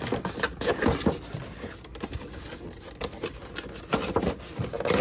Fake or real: real